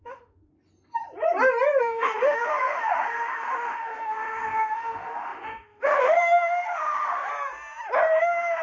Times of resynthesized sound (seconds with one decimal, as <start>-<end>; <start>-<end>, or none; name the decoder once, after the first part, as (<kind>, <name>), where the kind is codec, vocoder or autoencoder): 0.0-0.5 (autoencoder, DAC-VAE); 1.8-7.3; 8.2-8.6